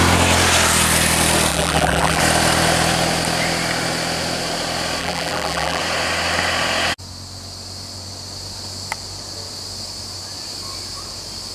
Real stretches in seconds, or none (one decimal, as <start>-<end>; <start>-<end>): 0.0-1.5; 2.2-5.0; 5.8-11.5